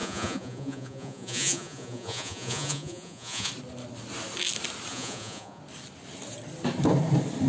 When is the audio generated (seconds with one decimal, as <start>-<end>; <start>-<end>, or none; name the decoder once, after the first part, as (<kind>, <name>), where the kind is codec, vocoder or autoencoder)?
0.0-3.5 (vocoder, Vocos); 4.9-5.6